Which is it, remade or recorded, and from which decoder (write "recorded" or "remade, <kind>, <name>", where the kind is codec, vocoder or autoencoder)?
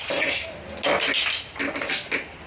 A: recorded